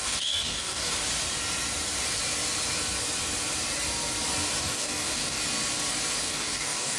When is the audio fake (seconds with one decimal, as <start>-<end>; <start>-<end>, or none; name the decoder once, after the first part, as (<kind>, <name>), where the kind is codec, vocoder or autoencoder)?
0.0-0.9 (codec, DAC); 4.6-5.4; 6.2-7.0